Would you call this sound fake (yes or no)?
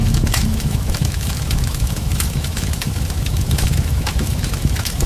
yes